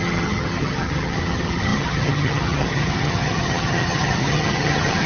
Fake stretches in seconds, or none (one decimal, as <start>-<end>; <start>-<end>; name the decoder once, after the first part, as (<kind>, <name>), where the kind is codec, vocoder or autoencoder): 0.0-5.1 (vocoder, HiFi-GAN)